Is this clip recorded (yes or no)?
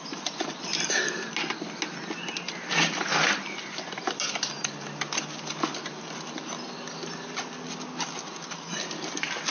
yes